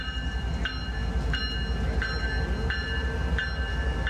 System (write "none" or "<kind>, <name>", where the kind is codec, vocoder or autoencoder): none